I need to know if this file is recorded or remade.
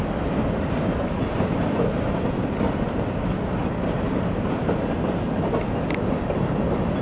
recorded